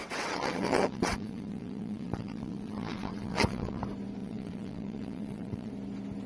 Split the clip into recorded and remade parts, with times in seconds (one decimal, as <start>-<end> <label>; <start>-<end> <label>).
0.0-3.8 remade; 3.8-4.2 recorded; 4.2-5.7 remade; 5.7-6.3 recorded